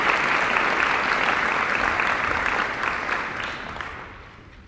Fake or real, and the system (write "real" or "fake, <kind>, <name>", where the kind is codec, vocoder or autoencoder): real